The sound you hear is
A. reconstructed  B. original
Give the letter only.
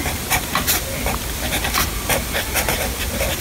B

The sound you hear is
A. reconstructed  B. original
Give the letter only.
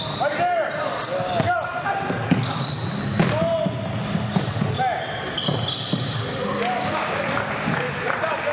B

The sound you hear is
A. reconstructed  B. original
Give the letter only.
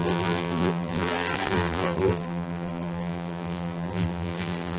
A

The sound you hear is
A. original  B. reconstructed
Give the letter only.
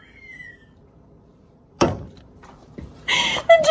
B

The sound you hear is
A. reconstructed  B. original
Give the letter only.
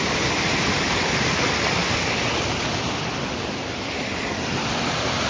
B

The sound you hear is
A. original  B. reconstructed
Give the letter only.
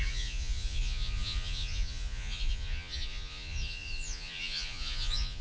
B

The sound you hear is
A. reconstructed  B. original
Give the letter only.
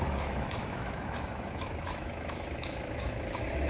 A